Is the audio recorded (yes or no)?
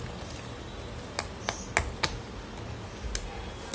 yes